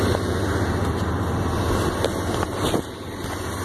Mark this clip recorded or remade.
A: recorded